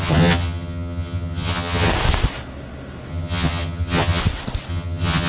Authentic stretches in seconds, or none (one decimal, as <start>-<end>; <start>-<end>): 1.9-3.1; 4.2-4.7